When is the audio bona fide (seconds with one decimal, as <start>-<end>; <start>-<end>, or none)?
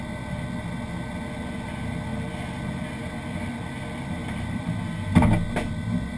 0.0-4.2; 4.7-6.2